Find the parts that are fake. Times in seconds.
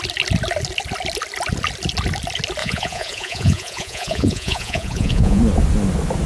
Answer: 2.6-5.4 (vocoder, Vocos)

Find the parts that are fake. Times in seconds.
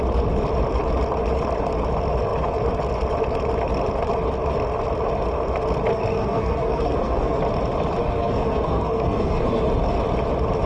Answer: 5.9-7.4 (codec, SNAC); 8.0-9.6